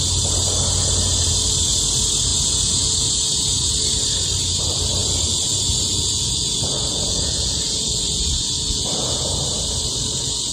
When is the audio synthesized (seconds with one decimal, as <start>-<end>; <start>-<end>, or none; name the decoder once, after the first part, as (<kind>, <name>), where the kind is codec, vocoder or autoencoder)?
2.3-3.7 (vocoder, Vocos); 5.0-9.4